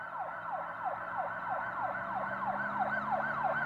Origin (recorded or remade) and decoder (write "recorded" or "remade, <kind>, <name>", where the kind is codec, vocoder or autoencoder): recorded